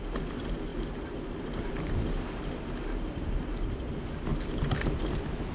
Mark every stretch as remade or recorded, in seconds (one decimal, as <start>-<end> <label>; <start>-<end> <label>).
0.0-5.5 recorded